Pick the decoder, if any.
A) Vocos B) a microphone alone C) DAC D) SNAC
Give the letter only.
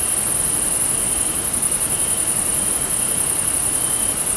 B